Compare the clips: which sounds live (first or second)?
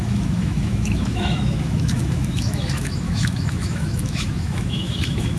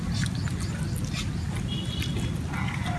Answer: second